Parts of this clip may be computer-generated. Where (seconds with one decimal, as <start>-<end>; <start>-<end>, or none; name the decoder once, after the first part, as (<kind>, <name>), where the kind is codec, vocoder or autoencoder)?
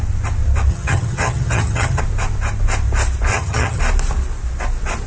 0.7-2.0 (vocoder, HiFi-GAN); 3.3-3.8